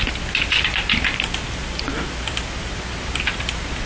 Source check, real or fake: real